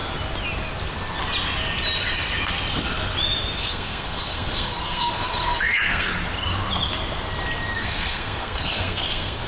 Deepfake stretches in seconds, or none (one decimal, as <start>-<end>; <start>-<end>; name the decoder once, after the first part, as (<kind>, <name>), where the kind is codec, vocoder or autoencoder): 3.6-6.1 (codec, SNAC); 7.8-9.5